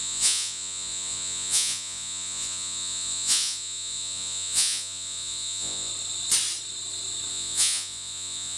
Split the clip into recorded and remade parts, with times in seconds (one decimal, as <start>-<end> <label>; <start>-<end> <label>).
0.0-5.9 remade; 5.9-7.3 recorded; 7.3-8.6 remade